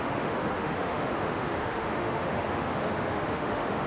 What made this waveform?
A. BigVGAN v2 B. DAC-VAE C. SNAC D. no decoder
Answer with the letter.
B